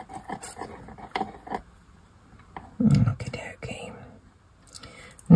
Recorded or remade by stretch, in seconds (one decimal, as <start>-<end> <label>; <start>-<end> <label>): 0.0-5.4 recorded